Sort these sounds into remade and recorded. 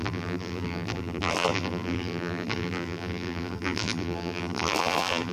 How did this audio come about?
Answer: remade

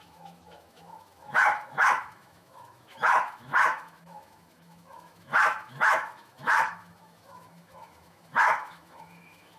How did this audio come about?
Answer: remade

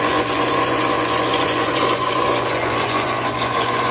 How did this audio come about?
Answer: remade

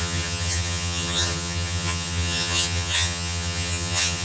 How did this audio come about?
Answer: remade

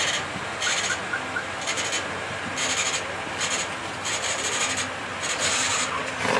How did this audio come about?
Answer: recorded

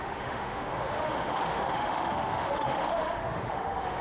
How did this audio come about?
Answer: remade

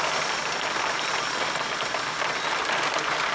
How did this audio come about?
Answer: recorded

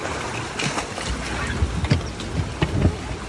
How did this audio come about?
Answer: recorded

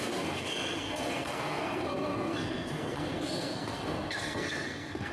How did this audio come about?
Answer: remade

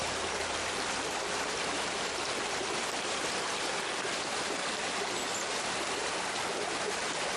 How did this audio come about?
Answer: recorded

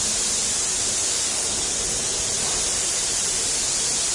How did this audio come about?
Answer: remade